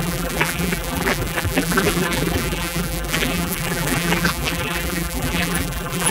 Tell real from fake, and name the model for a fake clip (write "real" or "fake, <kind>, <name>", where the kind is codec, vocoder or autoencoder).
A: fake, vocoder, BigVGAN v2